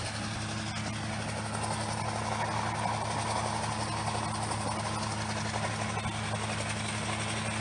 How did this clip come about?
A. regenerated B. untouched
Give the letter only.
B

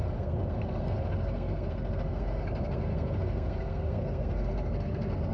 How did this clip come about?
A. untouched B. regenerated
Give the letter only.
B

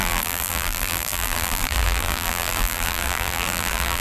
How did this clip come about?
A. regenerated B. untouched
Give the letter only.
A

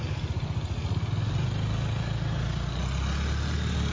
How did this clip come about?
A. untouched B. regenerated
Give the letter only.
A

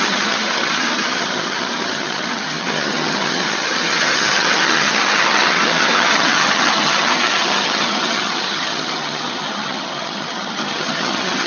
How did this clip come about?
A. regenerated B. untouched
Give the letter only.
A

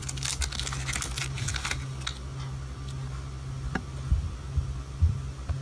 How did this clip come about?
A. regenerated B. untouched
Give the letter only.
B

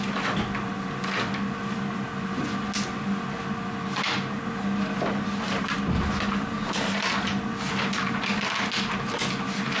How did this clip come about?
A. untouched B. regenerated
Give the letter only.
A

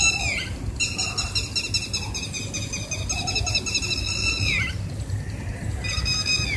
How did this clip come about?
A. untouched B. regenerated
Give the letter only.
A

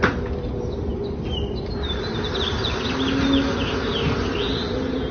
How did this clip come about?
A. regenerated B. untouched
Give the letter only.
B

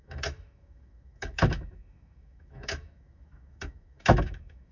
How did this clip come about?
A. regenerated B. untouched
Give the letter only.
A